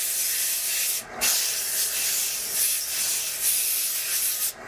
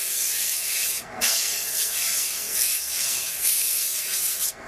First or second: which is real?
first